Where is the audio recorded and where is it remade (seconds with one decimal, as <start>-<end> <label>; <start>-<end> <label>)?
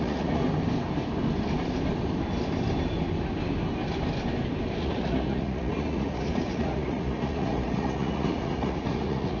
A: 0.0-0.4 remade; 0.4-4.8 recorded; 4.8-9.4 remade